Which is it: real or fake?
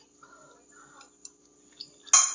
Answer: real